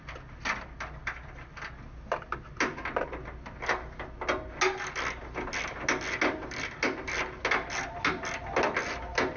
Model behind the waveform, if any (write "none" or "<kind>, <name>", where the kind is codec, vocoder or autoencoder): none